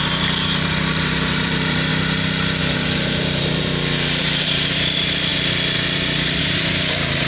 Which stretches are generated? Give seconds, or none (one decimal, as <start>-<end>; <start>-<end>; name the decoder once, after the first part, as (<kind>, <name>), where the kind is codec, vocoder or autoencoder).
0.0-1.9 (vocoder, BigVGAN v2); 2.6-3.7; 4.2-5.3; 6.4-7.3